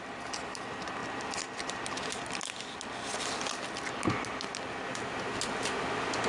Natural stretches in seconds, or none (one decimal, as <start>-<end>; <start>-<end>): 0.0-6.3